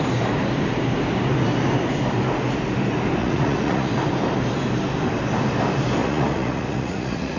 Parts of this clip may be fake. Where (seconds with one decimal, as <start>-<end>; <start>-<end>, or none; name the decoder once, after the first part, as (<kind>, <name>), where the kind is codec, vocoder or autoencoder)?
3.2-3.9 (vocoder, Vocos); 6.0-7.4